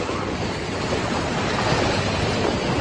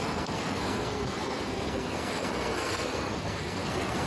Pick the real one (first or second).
first